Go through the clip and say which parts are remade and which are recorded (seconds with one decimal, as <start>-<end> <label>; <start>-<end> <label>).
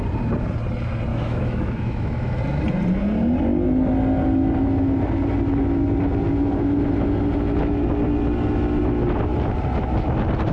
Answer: 0.0-1.1 recorded; 1.1-2.4 remade; 2.4-10.5 recorded